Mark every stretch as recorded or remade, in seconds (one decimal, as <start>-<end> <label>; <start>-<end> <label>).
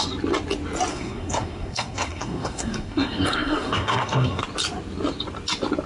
0.0-0.9 recorded; 0.9-4.4 remade; 4.4-5.9 recorded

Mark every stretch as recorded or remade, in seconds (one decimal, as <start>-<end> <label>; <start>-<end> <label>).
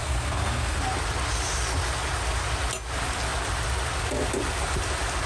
0.0-0.8 remade; 0.8-5.3 recorded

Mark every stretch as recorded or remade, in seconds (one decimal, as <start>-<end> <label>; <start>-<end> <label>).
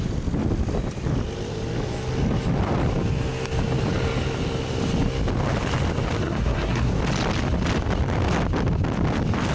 0.0-6.2 recorded; 6.2-7.0 remade; 7.0-9.5 recorded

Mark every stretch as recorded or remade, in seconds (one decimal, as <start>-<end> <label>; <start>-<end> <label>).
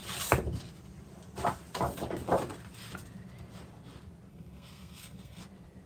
0.0-4.3 recorded; 4.3-5.4 remade; 5.4-5.9 recorded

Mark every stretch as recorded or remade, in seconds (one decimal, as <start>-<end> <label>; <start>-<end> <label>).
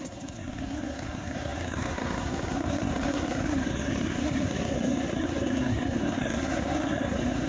0.0-7.5 remade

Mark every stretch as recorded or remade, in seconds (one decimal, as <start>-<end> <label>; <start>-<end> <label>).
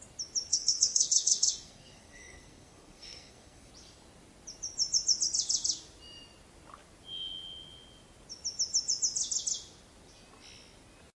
0.0-0.5 recorded; 0.5-3.7 remade; 3.7-11.2 recorded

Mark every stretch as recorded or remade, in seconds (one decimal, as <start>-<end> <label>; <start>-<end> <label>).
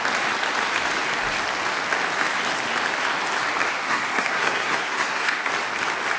0.0-3.8 recorded; 3.8-5.5 remade; 5.5-6.2 recorded